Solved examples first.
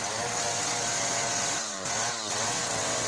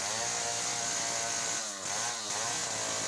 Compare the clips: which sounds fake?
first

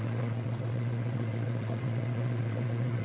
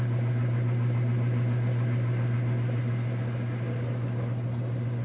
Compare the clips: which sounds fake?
first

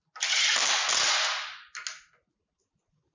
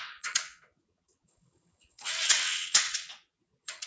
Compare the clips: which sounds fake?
second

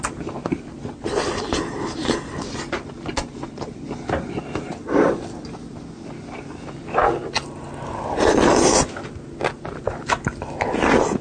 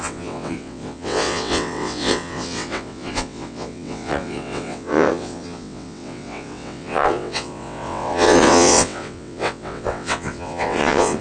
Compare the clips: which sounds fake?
second